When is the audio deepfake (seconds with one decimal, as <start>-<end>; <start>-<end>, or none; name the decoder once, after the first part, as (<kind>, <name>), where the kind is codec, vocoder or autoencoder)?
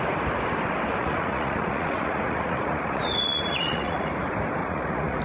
1.0-4.1 (vocoder, Vocos); 4.6-5.2